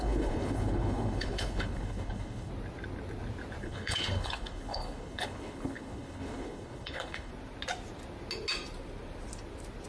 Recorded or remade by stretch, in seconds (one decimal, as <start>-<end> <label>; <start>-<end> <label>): 0.0-2.5 remade; 2.5-3.6 recorded; 3.6-7.3 remade; 7.3-9.9 recorded